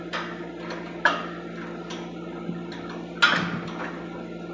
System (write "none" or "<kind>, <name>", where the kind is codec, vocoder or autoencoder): none